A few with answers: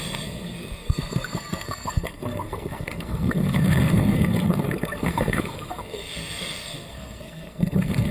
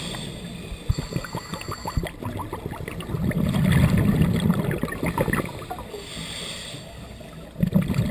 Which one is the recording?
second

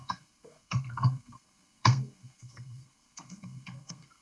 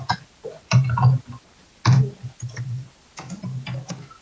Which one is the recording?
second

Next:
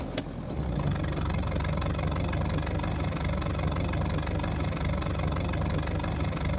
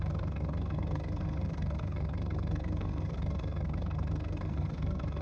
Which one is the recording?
first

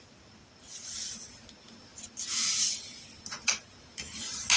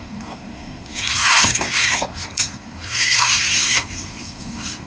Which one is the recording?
first